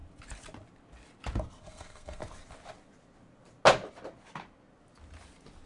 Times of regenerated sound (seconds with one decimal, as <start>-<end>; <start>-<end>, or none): 1.6-2.2